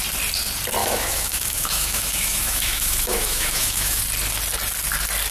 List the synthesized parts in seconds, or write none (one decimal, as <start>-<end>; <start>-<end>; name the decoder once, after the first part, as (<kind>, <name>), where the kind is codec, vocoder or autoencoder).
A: 0.8-4.0 (autoencoder, DAC-VAE)

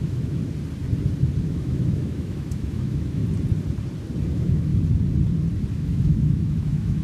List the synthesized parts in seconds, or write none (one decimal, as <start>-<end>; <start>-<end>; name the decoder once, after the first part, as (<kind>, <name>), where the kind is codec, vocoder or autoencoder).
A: 0.0-0.4 (autoencoder, DAC-VAE); 1.4-3.2; 4.3-4.7; 5.7-7.0

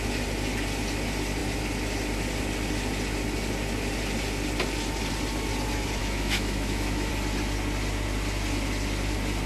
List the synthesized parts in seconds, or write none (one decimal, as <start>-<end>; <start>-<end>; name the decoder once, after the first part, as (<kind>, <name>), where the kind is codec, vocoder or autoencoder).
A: 6.0-7.1 (autoencoder, DAC-VAE)

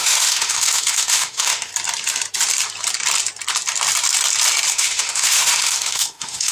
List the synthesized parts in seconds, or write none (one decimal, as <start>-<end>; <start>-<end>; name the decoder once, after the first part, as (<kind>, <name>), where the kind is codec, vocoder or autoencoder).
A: 0.0-1.7 (autoencoder, DAC-VAE); 4.7-6.5

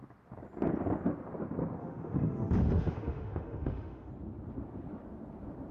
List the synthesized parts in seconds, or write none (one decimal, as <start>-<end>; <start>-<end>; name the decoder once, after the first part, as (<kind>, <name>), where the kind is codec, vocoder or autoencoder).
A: 1.8-4.1 (autoencoder, DAC-VAE)

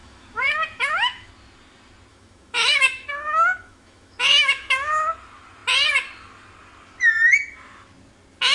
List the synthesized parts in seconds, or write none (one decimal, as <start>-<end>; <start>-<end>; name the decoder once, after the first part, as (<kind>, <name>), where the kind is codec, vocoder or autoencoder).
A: 0.0-1.3 (autoencoder, DAC-VAE); 2.1-4.9